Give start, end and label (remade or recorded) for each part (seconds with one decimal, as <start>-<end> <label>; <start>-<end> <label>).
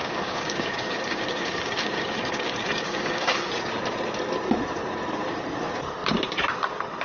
0.0-3.5 remade; 3.5-7.0 recorded